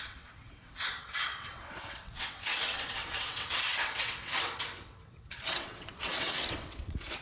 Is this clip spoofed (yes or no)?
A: yes